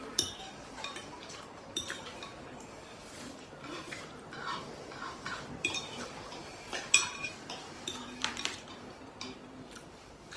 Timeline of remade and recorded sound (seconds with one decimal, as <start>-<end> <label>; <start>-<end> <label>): 0.0-10.4 remade